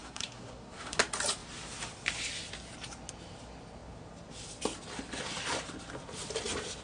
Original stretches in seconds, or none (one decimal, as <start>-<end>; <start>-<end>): 1.0-6.8